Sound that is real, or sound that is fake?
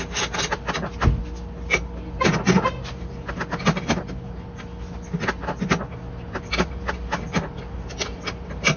real